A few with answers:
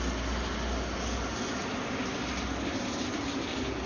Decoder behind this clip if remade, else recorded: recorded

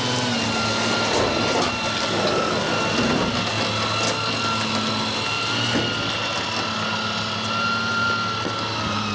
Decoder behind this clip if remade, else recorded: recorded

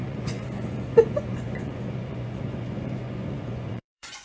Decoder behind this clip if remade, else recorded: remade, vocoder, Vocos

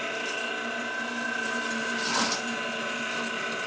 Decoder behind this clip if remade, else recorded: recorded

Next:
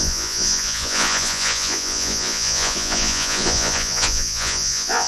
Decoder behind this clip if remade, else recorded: remade, vocoder, Vocos